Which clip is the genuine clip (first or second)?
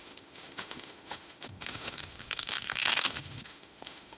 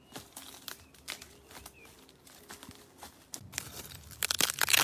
second